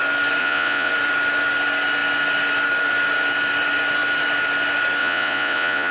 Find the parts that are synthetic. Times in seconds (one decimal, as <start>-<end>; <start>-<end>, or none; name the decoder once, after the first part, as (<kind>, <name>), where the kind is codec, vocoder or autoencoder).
0.4-0.9 (vocoder, Vocos); 5.0-5.9